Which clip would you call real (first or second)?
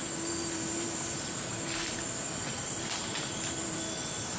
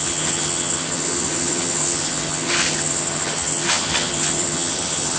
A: first